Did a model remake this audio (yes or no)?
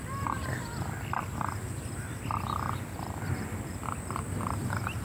no